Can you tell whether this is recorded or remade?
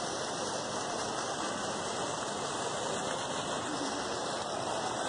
recorded